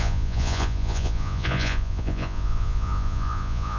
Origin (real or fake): fake